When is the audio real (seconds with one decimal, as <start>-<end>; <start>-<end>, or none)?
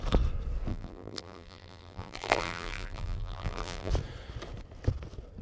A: 0.0-0.7; 3.9-5.4